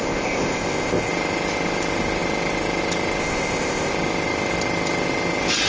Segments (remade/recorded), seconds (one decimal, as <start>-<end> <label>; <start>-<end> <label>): 0.0-1.1 remade; 1.1-3.2 recorded; 3.2-3.9 remade; 3.9-5.7 recorded